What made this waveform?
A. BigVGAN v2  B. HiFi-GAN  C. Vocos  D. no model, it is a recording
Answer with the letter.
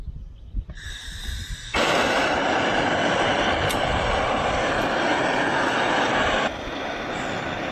D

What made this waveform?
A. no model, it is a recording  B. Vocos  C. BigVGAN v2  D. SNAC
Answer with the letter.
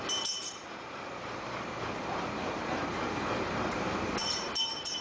C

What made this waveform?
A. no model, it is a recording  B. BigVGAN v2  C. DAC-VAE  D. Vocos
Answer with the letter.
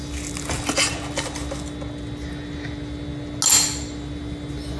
A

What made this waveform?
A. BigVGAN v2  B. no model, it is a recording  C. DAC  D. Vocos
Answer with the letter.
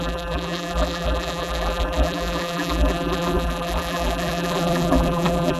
A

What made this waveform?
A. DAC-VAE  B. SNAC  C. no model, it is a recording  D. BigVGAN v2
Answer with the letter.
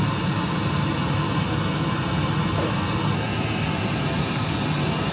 C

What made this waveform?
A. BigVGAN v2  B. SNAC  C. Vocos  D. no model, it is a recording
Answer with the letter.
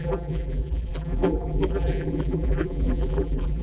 A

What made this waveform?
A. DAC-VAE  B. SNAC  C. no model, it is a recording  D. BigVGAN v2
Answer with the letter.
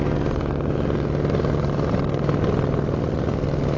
C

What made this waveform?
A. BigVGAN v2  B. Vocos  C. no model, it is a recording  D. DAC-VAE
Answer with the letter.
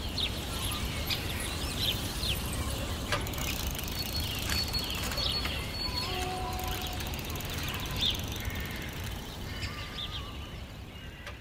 A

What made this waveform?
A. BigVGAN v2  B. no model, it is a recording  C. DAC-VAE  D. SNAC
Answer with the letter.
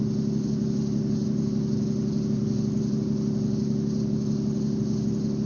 B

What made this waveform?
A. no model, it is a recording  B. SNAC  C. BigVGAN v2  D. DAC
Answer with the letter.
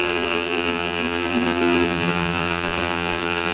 C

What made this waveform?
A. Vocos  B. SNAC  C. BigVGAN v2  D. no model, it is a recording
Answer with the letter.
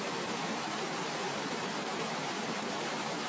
C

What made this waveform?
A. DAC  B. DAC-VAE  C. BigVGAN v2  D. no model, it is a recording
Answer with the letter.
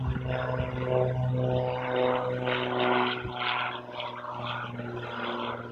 D